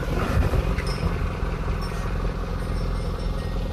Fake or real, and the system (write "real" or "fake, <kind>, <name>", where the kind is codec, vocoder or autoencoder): real